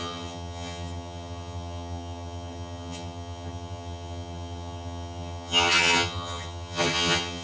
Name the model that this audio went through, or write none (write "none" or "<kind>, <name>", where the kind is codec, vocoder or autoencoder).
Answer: vocoder, HiFi-GAN